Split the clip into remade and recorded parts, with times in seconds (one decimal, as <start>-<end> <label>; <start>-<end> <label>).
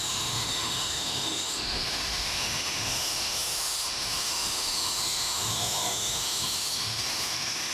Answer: 0.0-7.7 remade